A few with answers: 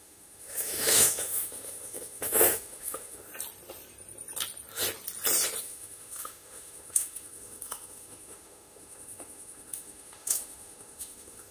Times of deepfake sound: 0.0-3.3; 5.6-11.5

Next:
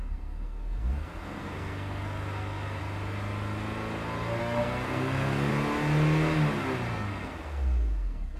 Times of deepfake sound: 0.0-2.8; 4.4-5.5; 6.9-8.4

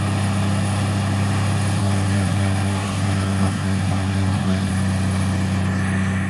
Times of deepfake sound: 1.8-4.7

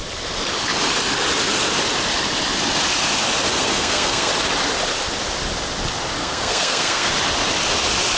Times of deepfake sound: 3.5-4.3; 6.2-7.1

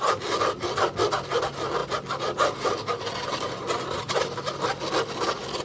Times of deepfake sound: none

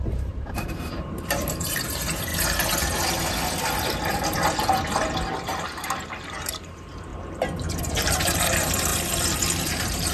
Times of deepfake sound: 0.0-2.3; 5.4-7.1; 7.8-8.9; 9.7-10.1

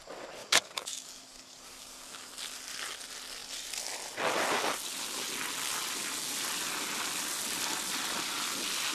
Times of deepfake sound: 0.4-2.3

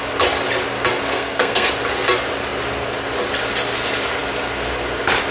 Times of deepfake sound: 1.1-1.7